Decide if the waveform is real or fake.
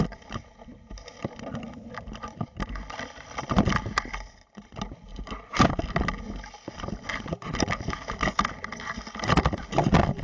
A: real